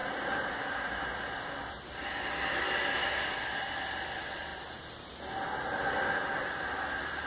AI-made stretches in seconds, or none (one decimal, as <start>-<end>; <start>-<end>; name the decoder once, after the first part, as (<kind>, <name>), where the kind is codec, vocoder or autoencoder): 0.0-1.7 (vocoder, BigVGAN v2); 4.5-5.2